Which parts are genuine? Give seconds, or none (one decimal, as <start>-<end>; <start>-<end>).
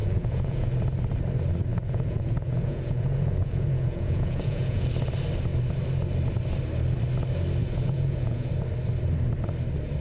0.7-1.7; 4.9-7.6; 8.5-10.0